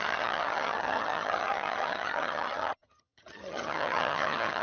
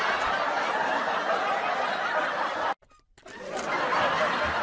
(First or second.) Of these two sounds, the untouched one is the second